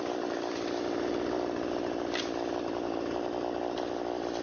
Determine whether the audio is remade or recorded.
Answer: recorded